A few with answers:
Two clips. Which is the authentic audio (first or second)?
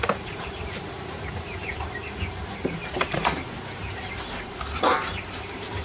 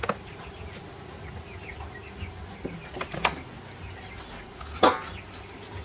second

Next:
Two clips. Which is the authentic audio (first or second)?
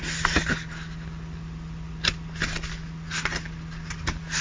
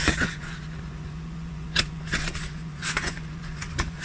first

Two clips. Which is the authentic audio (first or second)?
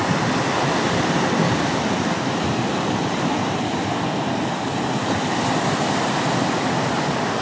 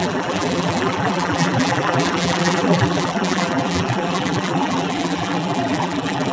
first